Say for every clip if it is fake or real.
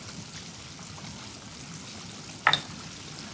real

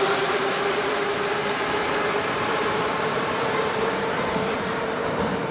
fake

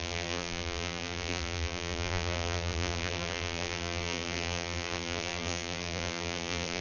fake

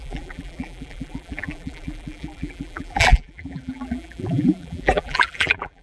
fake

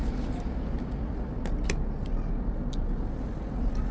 real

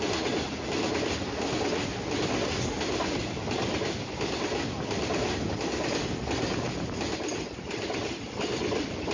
real